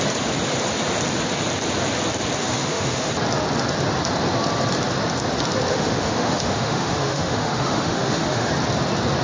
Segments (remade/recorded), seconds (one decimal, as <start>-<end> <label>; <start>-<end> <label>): 0.0-2.4 recorded; 2.4-3.1 remade; 3.1-5.7 recorded; 5.7-8.5 remade; 8.5-9.2 recorded